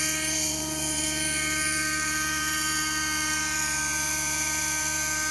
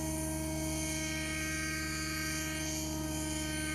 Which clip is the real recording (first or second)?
second